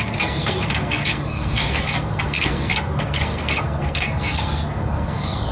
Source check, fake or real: fake